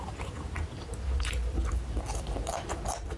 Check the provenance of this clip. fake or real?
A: real